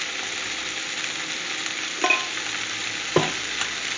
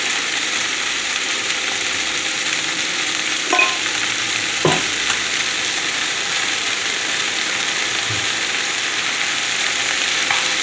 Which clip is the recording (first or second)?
first